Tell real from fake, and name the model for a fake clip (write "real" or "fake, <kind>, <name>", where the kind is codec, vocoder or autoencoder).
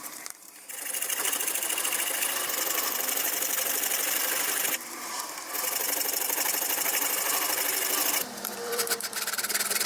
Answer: fake, vocoder, BigVGAN v2